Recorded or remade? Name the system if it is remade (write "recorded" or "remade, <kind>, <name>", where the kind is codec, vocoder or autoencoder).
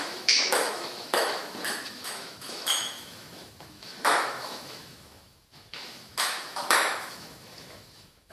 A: remade, autoencoder, DAC-VAE